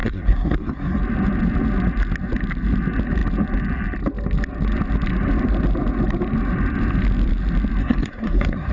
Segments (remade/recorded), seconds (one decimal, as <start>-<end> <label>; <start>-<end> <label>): 0.0-1.0 remade; 1.0-7.8 recorded; 7.8-8.7 remade